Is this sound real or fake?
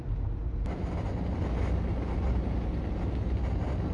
real